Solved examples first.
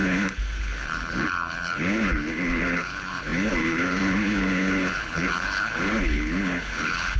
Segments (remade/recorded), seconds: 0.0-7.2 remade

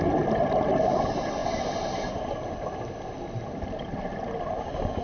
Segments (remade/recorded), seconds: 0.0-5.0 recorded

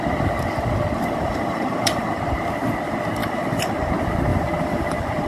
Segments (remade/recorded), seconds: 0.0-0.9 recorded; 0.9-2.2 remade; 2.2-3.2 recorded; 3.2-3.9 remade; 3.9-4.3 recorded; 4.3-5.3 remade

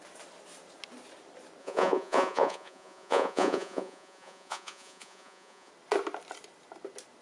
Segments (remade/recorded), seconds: 0.0-1.6 recorded; 1.6-5.7 remade; 5.7-7.2 recorded

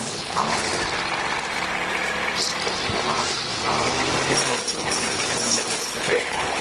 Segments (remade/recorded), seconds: 0.0-0.7 remade; 0.7-4.7 recorded; 4.7-6.6 remade

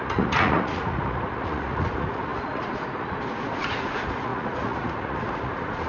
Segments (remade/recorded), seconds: 0.0-5.9 remade